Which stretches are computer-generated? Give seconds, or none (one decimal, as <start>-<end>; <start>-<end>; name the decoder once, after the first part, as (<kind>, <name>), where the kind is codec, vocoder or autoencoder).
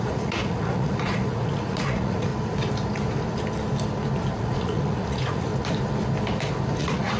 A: 0.0-2.3 (vocoder, Vocos); 4.3-5.5; 6.8-7.2